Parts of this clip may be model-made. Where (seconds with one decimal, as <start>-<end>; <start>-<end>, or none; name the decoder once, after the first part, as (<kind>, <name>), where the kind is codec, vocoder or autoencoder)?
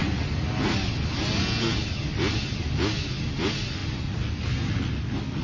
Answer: none